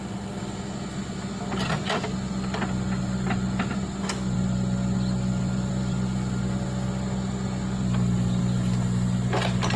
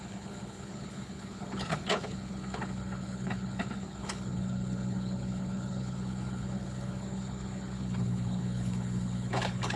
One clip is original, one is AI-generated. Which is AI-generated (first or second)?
second